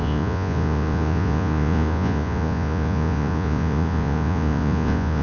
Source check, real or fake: fake